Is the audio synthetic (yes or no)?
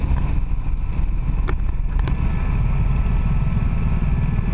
no